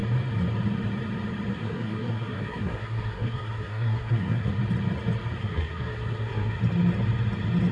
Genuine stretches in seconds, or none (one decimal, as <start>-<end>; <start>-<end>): 0.0-1.5; 4.5-5.4; 6.6-7.7